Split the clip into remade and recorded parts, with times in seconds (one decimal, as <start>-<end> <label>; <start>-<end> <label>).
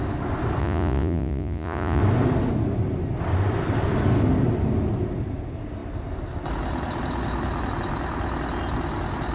0.0-0.6 recorded; 0.6-2.0 remade; 2.0-9.3 recorded